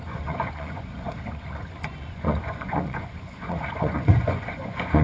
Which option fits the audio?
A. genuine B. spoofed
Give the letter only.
B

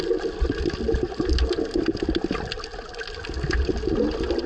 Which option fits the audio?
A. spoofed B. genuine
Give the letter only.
B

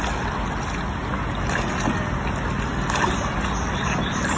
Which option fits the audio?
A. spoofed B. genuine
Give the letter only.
B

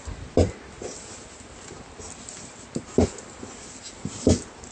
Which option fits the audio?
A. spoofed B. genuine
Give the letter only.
B